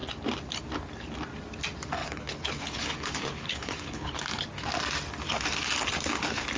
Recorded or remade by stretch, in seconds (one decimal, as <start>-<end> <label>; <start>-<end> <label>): 0.0-2.0 recorded; 2.0-4.2 remade; 4.2-6.6 recorded